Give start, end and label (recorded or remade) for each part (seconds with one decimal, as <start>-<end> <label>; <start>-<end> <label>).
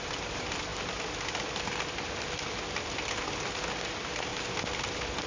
0.0-5.3 recorded